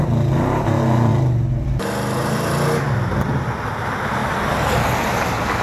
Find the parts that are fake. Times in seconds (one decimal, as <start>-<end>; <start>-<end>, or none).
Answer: none